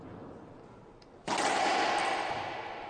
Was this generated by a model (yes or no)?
no